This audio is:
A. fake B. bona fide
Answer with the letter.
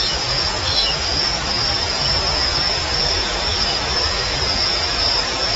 A